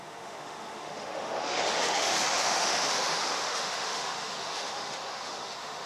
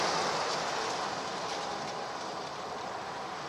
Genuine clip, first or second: second